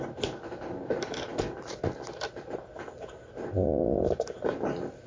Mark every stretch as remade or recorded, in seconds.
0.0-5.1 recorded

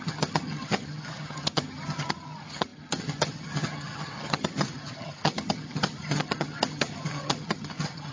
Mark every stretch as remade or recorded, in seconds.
0.0-8.1 remade

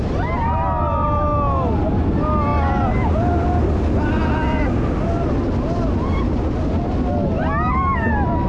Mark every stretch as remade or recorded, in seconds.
0.0-8.5 recorded

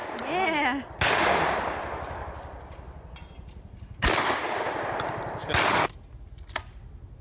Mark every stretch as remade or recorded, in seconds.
0.0-7.2 recorded

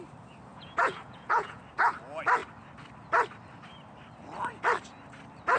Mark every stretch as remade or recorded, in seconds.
0.0-0.5 recorded; 0.5-1.6 remade; 1.6-5.6 recorded

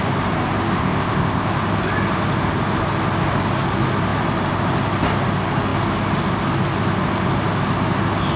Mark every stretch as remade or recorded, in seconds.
0.0-0.8 recorded; 0.8-1.5 remade; 1.5-8.4 recorded

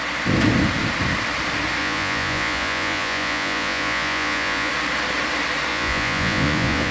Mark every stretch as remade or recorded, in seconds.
0.0-1.8 recorded; 1.8-4.7 remade; 4.7-5.7 recorded; 5.7-6.9 remade